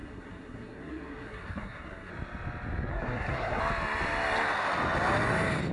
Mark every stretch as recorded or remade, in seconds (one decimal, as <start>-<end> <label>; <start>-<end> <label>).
0.0-2.1 remade; 2.1-2.9 recorded; 2.9-3.6 remade; 3.6-5.7 recorded